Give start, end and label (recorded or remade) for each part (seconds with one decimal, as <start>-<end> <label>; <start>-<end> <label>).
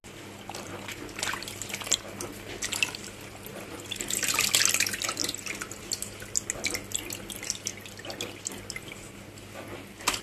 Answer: 0.0-3.5 recorded; 3.5-4.3 remade; 4.3-10.2 recorded